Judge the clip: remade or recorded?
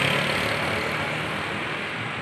recorded